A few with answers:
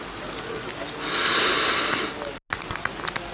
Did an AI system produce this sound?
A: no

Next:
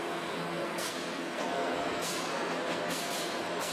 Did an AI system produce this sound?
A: yes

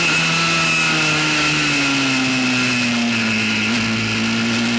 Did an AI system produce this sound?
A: no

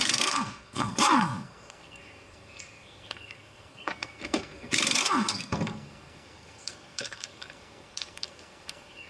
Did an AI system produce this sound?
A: yes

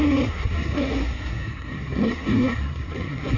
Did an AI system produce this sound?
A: yes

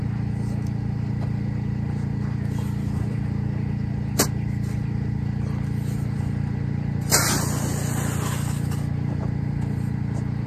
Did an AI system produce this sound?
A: no